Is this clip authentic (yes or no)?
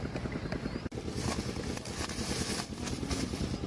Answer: yes